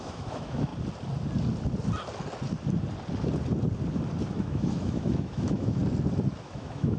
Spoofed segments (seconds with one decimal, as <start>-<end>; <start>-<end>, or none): 0.0-0.7; 4.3-5.8; 6.4-7.0